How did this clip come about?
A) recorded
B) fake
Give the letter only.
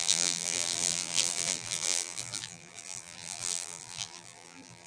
B